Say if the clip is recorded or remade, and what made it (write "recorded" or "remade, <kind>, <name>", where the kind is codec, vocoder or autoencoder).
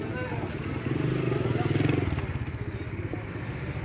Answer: recorded